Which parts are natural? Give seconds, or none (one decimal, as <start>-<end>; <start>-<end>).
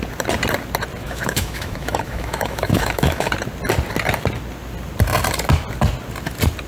0.0-1.0; 3.3-6.7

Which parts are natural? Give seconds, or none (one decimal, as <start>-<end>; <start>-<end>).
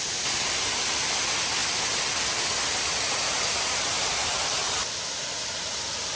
0.0-6.2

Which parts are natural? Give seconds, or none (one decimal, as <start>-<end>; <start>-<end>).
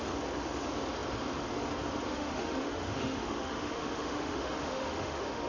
0.0-2.1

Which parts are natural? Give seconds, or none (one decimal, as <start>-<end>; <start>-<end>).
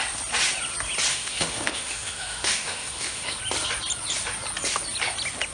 0.0-1.1; 3.4-5.5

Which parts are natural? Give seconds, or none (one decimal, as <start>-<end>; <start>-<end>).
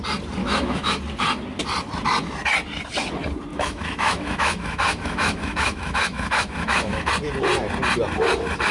0.0-0.4; 1.0-3.5; 7.1-8.7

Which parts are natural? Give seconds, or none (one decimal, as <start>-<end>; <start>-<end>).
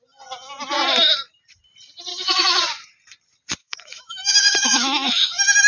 0.0-2.1; 2.6-3.6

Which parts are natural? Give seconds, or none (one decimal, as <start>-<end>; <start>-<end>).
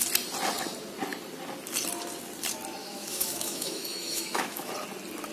0.0-2.8; 4.7-5.3